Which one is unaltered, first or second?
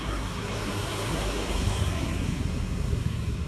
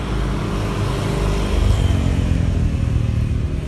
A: second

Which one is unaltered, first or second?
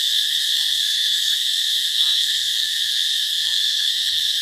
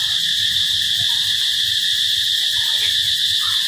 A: second